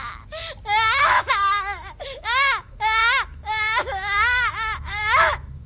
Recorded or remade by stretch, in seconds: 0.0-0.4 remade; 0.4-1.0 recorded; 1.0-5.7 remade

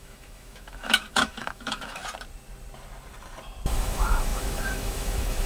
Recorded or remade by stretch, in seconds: 0.0-2.0 remade; 2.0-3.7 recorded; 3.7-5.5 remade

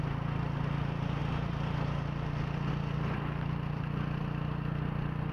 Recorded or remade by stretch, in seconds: 0.0-5.3 recorded